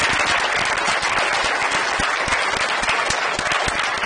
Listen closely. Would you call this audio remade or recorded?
recorded